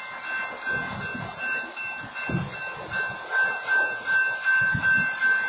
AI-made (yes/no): no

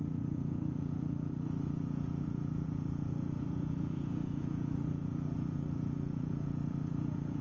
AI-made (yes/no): yes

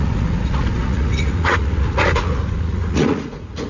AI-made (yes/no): yes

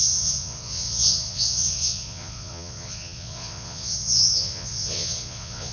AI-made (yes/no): yes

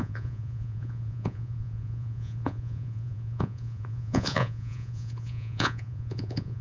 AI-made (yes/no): yes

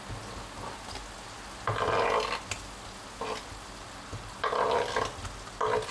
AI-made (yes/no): no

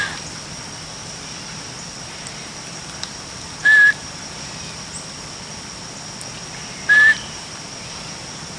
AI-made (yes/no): no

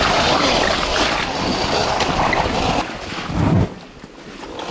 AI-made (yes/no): no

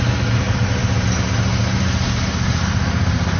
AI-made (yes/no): no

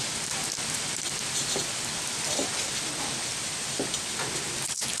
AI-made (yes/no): no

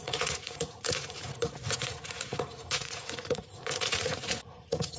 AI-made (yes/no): yes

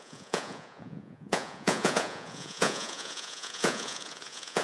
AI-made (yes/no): yes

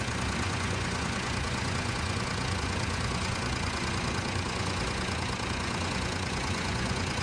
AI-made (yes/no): yes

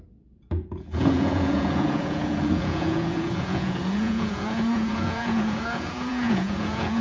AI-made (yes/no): yes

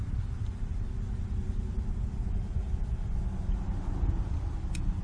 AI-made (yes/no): no